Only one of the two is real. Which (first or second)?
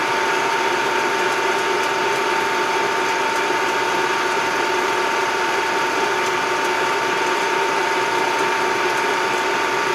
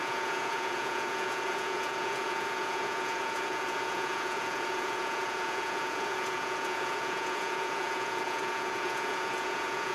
first